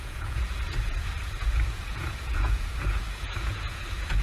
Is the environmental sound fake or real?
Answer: fake